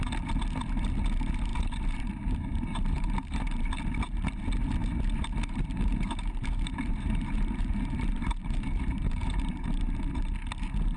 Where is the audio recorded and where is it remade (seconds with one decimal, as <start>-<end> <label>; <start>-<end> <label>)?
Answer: 0.0-1.5 recorded; 1.5-3.4 remade; 3.4-4.8 recorded; 4.8-10.0 remade; 10.0-11.0 recorded

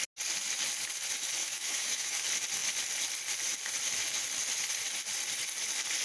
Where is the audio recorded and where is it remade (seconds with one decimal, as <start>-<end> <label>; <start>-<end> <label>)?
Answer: 0.0-1.4 recorded; 1.4-2.2 remade; 2.2-6.0 recorded

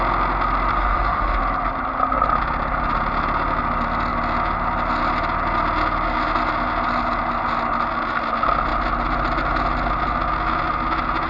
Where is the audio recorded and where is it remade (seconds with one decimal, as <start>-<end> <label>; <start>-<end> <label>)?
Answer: 0.0-0.7 recorded; 0.7-1.4 remade; 1.4-11.3 recorded

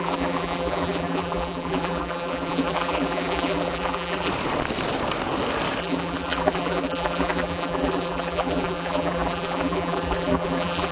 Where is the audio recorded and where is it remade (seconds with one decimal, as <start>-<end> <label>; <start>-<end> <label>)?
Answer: 0.0-4.3 remade; 4.3-5.8 recorded; 5.8-10.9 remade

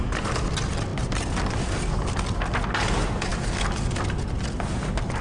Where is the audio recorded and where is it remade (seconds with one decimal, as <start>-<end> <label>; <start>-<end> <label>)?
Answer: 0.0-5.2 recorded

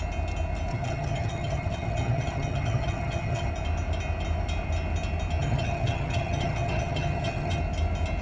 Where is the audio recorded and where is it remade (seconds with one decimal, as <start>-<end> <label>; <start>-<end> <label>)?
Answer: 0.0-0.7 recorded; 0.7-3.5 remade; 3.5-5.4 recorded; 5.4-7.6 remade; 7.6-8.2 recorded

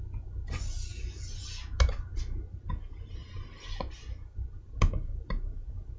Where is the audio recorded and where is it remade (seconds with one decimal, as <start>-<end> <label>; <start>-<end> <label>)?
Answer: 0.0-6.0 recorded

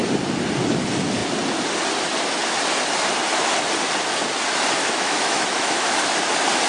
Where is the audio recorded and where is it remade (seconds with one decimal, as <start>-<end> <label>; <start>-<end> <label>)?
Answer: 0.0-4.8 recorded; 4.8-6.2 remade; 6.2-6.7 recorded